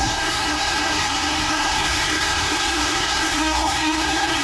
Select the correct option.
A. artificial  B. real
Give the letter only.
A